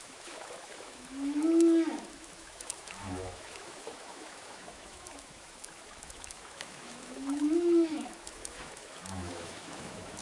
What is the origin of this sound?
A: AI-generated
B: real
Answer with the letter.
A